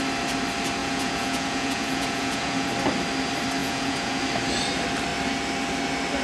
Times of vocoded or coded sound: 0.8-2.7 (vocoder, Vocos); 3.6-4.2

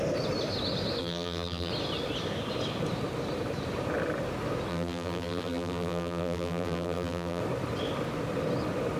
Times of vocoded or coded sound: 1.0-1.7 (vocoder, BigVGAN v2); 4.7-7.4

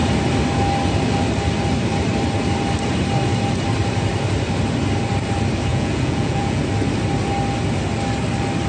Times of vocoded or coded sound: 5.7-6.6 (vocoder, Vocos)

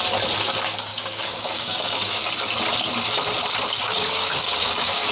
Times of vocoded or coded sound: 0.9-2.3 (codec, DAC); 3.8-5.1